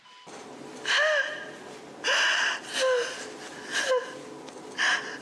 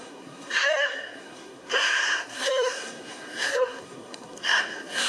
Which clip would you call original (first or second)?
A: first